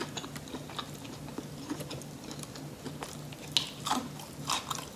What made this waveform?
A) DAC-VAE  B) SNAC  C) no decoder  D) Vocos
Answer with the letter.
C